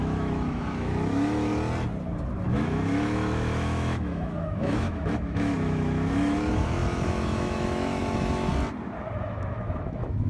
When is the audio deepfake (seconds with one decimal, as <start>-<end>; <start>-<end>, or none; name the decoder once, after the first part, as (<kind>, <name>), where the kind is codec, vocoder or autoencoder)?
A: 0.0-1.5 (autoencoder, DAC-VAE); 2.5-8.5; 9.2-10.3